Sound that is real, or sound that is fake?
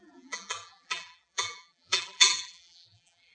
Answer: fake